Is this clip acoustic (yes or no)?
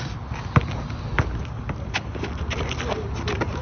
yes